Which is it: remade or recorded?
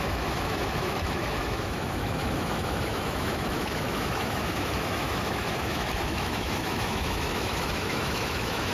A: remade